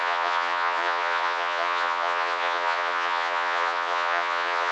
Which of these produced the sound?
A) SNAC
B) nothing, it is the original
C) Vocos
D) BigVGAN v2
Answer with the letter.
C